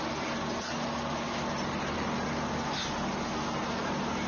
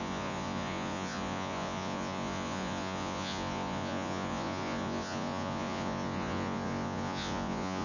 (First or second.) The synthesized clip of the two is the second